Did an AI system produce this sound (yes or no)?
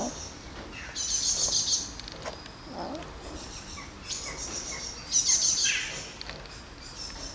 no